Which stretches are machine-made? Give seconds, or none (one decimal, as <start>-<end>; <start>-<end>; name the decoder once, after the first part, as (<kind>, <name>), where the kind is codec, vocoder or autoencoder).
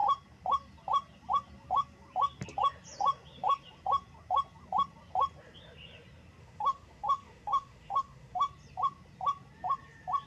6.4-8.5 (autoencoder, DAC-VAE)